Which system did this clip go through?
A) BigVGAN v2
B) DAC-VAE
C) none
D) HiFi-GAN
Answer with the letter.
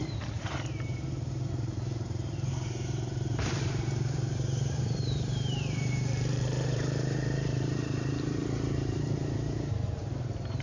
A